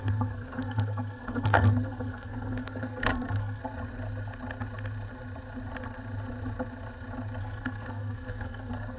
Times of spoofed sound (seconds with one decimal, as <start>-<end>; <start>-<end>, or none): 0.0-3.6; 7.4-9.0